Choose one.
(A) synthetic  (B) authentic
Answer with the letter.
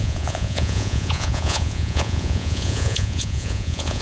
A